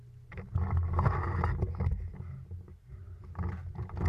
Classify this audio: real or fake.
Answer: real